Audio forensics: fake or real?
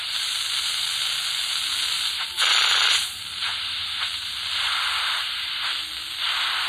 real